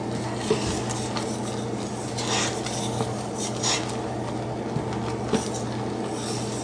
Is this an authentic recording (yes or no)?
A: yes